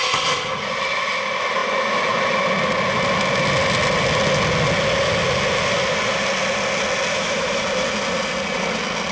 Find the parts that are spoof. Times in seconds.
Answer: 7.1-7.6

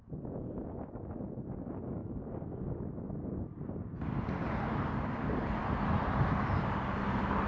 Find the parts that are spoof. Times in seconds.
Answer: none

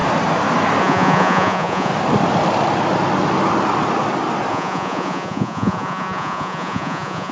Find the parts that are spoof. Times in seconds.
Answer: 0.8-1.9; 4.5-7.3

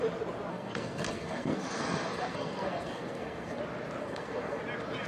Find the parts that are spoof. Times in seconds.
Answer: 0.5-3.6; 4.0-4.6

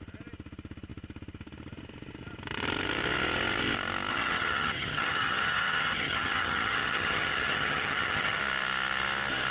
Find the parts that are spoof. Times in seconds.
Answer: 4.1-8.4

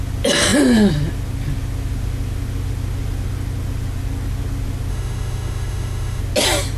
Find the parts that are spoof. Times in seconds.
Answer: 4.9-6.2